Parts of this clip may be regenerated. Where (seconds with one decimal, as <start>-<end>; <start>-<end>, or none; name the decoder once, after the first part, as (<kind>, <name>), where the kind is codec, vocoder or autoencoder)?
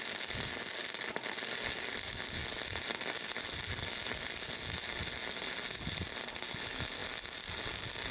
none